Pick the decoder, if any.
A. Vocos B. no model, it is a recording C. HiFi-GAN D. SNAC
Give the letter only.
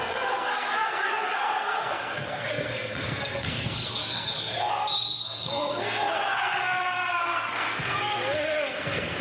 D